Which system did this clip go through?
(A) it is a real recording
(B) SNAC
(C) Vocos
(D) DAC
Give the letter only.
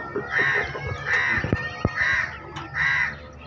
A